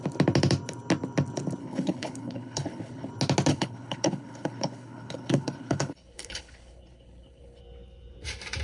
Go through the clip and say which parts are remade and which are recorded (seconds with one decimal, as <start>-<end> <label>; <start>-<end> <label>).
0.0-1.6 recorded; 1.6-3.1 remade; 3.1-3.5 recorded; 3.5-7.6 remade; 7.6-8.6 recorded